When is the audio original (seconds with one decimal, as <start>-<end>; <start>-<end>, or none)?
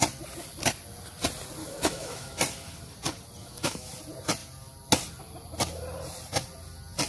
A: 0.0-1.6; 2.4-3.4; 3.9-7.1